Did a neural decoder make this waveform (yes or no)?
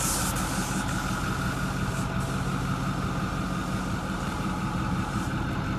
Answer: no